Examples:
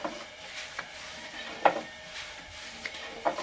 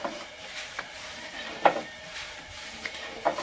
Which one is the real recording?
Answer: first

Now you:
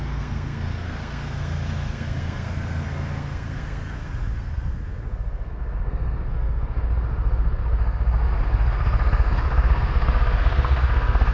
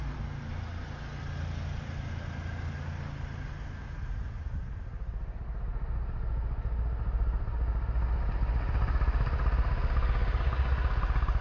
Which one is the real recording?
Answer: second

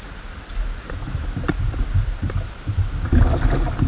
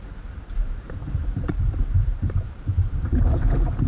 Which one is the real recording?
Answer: first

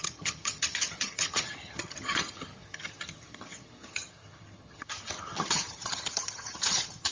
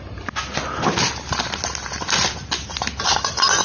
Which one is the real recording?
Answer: second